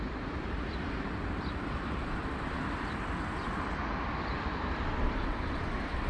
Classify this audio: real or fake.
fake